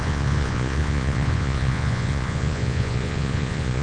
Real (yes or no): no